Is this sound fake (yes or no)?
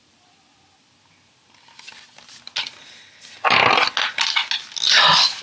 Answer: no